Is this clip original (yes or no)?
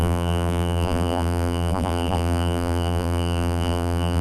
no